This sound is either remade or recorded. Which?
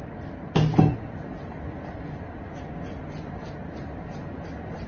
recorded